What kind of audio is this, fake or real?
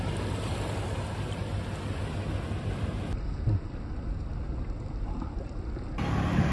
real